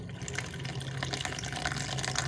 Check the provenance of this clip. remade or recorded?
recorded